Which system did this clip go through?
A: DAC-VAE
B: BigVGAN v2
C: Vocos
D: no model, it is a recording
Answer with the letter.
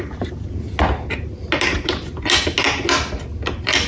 D